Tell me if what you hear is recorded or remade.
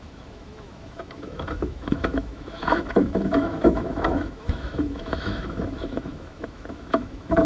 remade